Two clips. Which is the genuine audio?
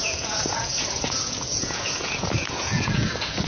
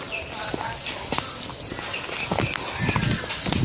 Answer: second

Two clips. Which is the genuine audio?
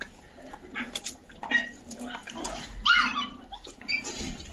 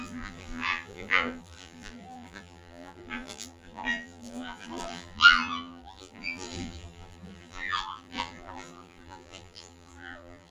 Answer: first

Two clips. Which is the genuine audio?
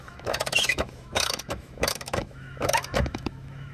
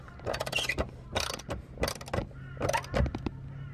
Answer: second